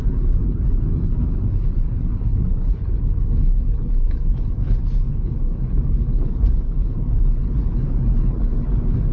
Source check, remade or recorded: remade